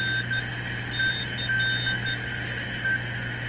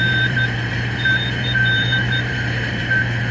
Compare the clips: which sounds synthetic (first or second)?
second